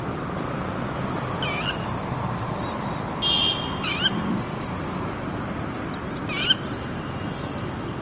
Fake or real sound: real